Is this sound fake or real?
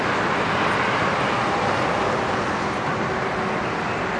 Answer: real